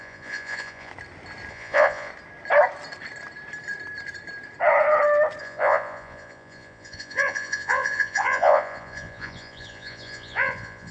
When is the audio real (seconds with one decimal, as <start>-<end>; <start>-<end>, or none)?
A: 0.9-1.5; 2.1-5.4